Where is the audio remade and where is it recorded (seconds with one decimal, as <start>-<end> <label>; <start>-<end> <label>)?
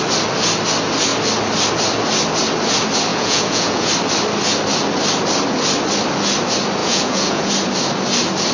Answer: 0.0-3.1 recorded; 3.1-3.9 remade; 3.9-6.8 recorded; 6.8-7.5 remade; 7.5-8.5 recorded